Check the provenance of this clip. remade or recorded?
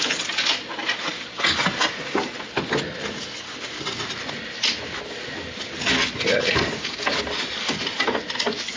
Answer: recorded